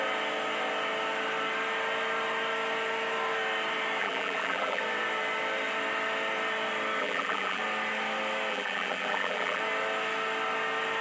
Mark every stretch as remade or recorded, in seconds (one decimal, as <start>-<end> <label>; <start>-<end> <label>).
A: 0.0-4.0 recorded; 4.0-4.8 remade; 4.8-7.0 recorded; 7.0-7.6 remade; 7.6-8.5 recorded; 8.5-9.6 remade; 9.6-11.0 recorded